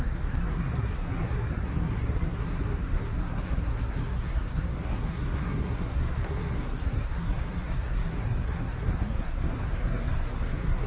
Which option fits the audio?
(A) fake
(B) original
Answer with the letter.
A